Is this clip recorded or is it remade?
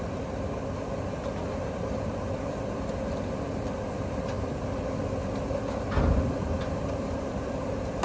remade